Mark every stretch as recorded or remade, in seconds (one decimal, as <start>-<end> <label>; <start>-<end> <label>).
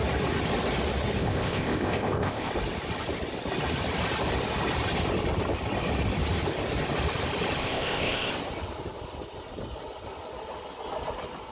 0.0-1.2 recorded; 1.2-2.5 remade; 2.5-7.6 recorded; 7.6-8.3 remade; 8.3-11.5 recorded